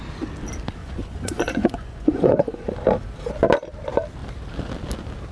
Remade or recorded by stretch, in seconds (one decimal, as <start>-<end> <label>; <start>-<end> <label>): 0.0-0.8 recorded; 0.8-2.7 remade; 2.7-5.3 recorded